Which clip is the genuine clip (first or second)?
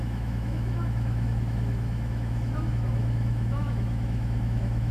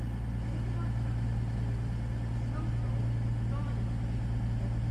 second